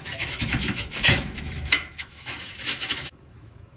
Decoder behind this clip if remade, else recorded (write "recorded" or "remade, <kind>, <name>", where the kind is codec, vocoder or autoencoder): remade, autoencoder, DAC-VAE